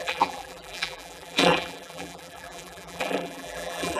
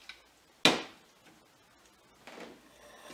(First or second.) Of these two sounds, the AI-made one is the first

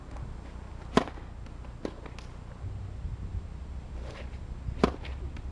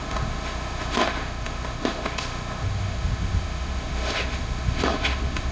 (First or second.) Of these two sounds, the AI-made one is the second